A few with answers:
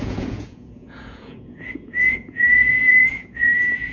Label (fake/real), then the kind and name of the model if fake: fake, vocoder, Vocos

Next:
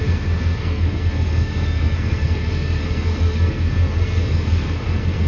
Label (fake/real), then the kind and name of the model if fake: fake, codec, SNAC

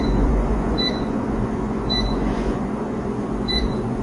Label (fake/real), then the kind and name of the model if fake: fake, vocoder, Vocos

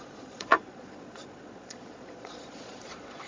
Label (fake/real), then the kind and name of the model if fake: fake, vocoder, Vocos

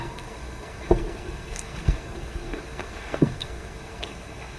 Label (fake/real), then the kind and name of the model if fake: fake, codec, SNAC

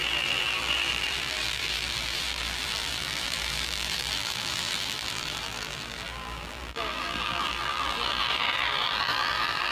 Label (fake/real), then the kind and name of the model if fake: fake, vocoder, BigVGAN v2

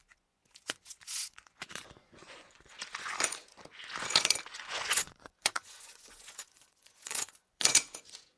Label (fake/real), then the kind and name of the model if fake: fake, vocoder, Vocos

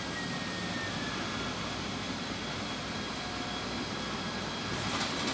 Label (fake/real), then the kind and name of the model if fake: real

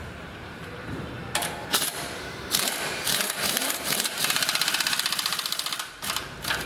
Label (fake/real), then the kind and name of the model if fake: fake, vocoder, BigVGAN v2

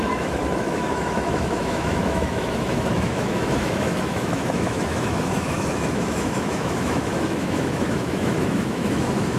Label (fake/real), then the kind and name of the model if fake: fake, autoencoder, DAC-VAE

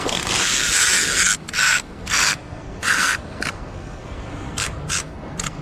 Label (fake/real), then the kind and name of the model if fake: fake, codec, SNAC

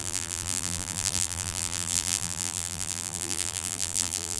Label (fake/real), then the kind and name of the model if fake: fake, vocoder, BigVGAN v2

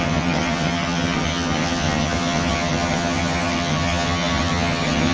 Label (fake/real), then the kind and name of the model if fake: fake, vocoder, HiFi-GAN